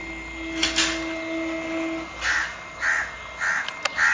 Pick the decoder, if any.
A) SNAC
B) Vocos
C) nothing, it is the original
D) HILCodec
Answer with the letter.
C